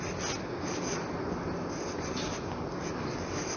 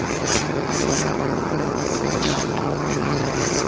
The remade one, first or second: second